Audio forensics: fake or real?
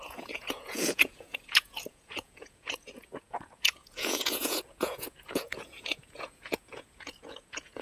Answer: fake